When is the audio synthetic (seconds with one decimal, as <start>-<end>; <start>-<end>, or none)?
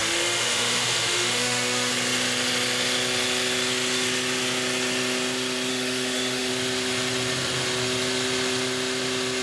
0.0-1.9; 5.7-6.5